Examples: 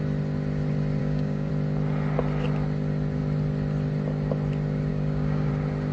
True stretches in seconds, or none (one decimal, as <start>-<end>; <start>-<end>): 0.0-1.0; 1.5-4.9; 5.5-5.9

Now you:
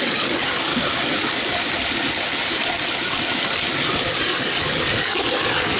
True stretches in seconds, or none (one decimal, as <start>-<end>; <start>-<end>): 0.7-4.2

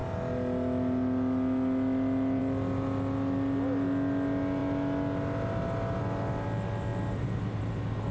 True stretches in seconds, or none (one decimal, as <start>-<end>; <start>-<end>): 0.0-8.1

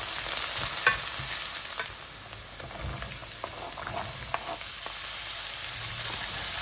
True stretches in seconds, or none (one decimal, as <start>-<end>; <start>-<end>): 0.0-6.6

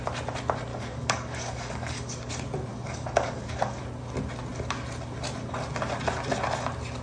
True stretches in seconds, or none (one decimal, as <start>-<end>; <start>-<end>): 0.0-0.7; 2.3-2.7; 3.8-7.0

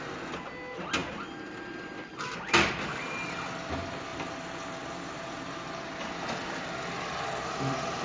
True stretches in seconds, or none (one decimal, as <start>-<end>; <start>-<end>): 0.0-8.0

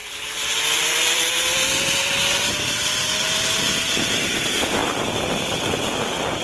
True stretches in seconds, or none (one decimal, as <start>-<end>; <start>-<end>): 0.0-6.4